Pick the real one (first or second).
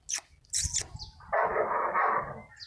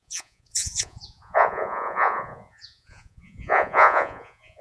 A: first